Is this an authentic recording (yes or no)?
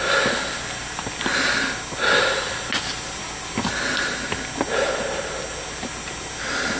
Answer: yes